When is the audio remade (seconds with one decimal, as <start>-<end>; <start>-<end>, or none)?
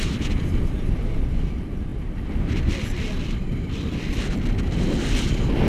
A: none